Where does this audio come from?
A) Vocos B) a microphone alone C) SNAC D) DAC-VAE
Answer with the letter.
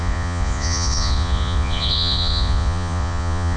A